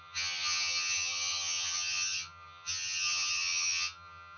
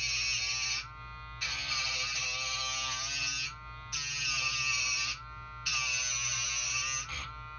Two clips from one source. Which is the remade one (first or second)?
first